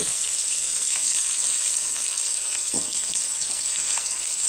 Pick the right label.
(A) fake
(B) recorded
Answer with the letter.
A